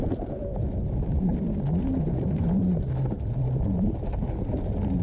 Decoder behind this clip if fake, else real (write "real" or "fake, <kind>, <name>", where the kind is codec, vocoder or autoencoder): real